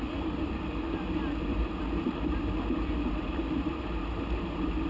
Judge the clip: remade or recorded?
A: recorded